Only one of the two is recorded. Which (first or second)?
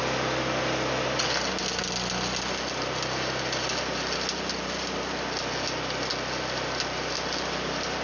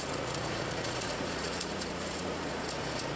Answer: first